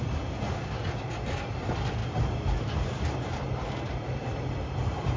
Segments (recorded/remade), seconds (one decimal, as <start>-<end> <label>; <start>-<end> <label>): 0.0-5.2 recorded